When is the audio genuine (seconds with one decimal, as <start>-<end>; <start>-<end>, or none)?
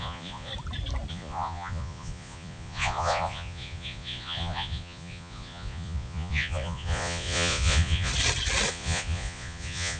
0.5-1.1; 8.1-8.7